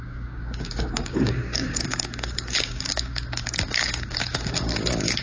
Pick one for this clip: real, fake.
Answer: fake